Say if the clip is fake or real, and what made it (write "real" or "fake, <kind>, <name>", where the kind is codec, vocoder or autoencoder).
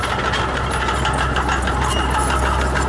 real